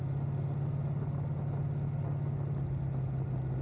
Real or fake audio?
real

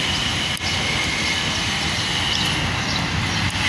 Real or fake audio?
real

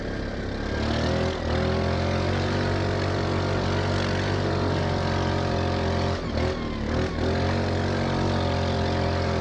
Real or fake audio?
real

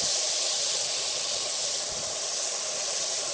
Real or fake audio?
real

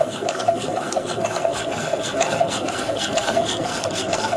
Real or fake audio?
fake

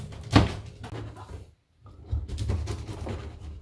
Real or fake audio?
real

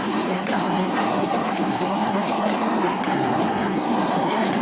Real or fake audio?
fake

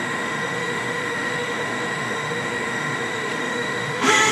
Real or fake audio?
fake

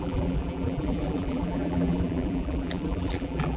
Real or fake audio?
fake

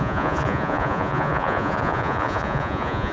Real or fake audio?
fake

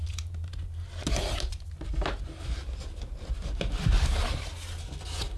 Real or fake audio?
real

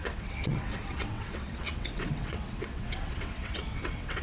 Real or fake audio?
fake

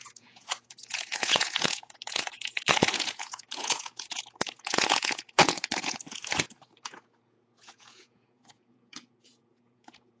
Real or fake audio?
fake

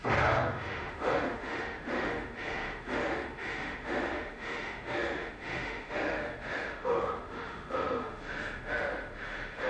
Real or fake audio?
fake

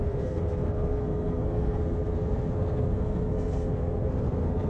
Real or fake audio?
fake